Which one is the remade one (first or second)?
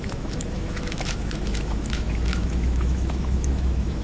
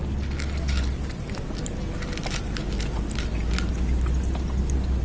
first